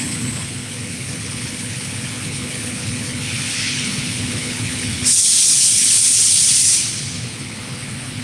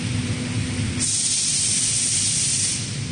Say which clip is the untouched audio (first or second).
second